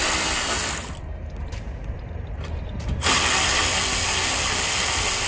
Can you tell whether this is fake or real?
real